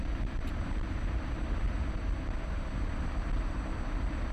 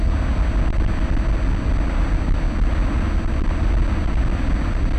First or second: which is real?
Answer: second